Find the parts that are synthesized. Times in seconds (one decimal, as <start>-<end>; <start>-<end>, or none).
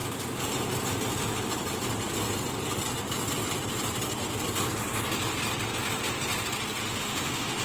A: 6.8-7.6